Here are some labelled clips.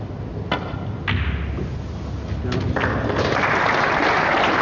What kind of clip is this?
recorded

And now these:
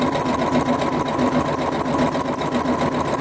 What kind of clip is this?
recorded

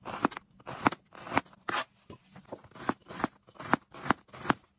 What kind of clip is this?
recorded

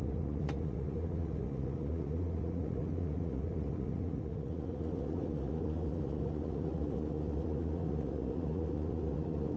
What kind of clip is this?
remade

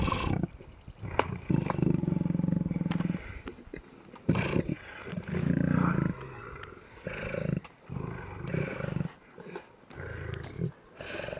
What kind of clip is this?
recorded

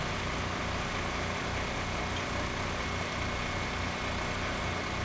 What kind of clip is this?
recorded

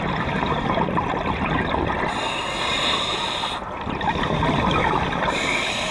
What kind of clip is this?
recorded